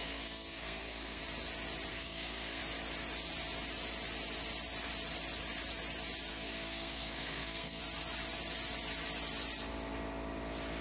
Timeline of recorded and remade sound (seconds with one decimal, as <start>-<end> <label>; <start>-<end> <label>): 0.0-1.2 remade; 1.2-1.9 recorded; 1.9-2.6 remade; 2.6-6.3 recorded; 6.3-7.8 remade; 7.8-10.8 recorded